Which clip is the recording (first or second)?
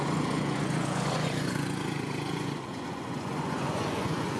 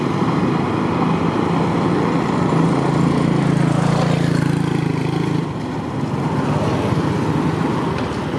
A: second